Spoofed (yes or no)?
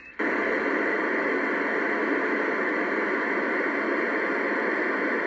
no